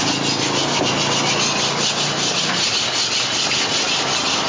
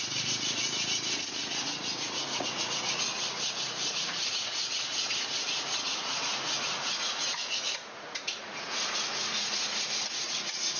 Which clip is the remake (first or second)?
second